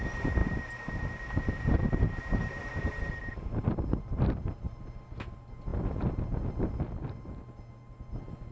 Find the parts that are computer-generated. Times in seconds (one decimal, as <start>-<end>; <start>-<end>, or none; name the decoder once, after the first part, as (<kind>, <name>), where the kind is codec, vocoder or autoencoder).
0.4-4.8 (vocoder, BigVGAN v2)